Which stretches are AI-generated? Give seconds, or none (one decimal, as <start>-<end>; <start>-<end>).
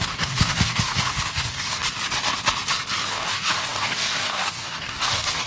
0.0-1.8; 3.1-5.5